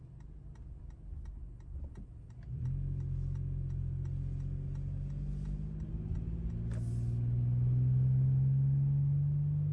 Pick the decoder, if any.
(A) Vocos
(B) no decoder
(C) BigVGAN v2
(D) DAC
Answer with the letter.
B